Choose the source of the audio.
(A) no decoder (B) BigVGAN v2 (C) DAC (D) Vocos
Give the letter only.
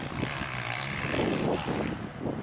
A